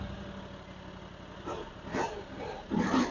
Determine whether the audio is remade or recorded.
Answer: recorded